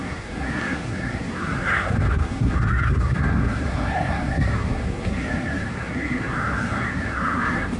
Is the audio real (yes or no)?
no